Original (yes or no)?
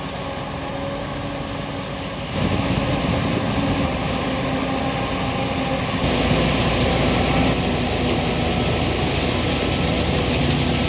yes